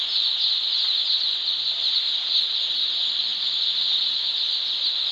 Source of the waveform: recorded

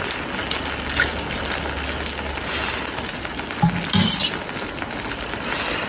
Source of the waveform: recorded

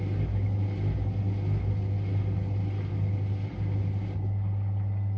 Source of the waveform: recorded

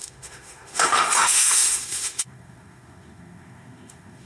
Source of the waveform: remade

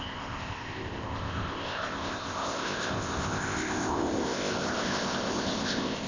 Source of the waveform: remade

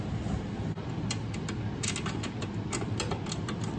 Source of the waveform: recorded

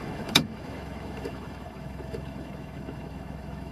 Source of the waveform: remade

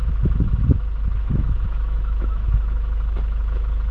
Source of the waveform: remade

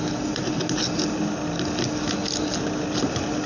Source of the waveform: recorded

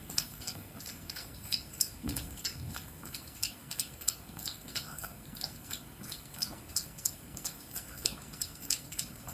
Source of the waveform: remade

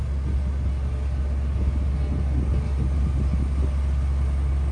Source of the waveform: recorded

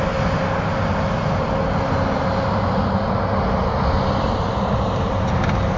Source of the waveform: recorded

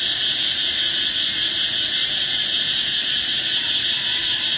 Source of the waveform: recorded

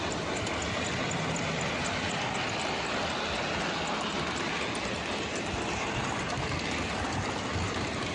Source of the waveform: recorded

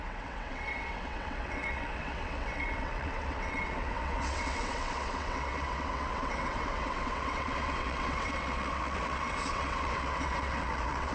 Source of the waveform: remade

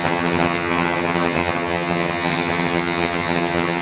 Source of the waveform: remade